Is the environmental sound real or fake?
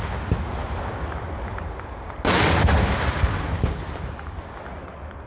real